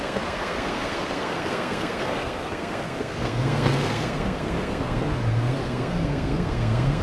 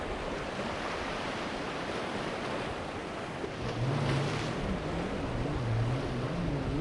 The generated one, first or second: first